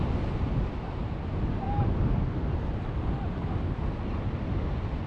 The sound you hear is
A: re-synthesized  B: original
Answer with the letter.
B